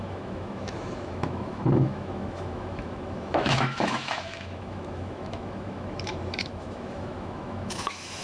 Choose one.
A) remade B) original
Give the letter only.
A